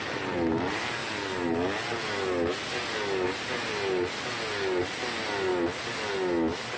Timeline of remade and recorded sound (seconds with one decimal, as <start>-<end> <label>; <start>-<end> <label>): 0.0-6.8 recorded